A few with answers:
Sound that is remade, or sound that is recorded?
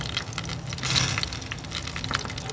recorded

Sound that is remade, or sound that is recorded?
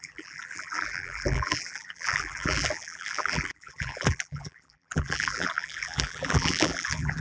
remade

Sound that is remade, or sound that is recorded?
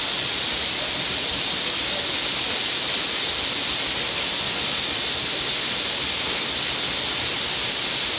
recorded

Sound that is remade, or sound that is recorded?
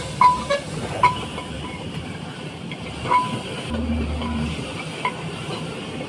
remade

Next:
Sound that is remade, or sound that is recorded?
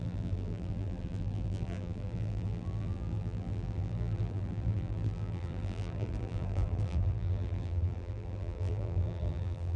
remade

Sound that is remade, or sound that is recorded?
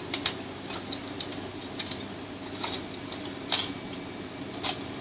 recorded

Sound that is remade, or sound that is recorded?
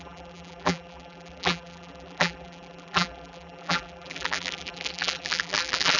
remade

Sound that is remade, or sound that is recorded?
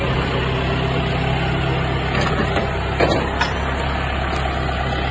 recorded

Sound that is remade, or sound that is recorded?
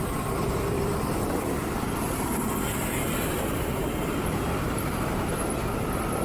remade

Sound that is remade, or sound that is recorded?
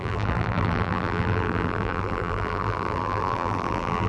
remade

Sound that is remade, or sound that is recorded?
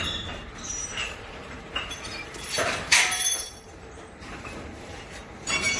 remade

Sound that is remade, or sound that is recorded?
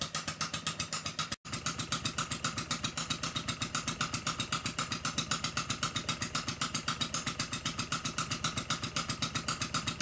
recorded